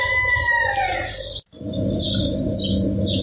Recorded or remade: recorded